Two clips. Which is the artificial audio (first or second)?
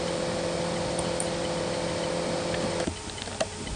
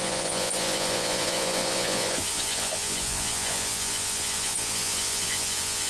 second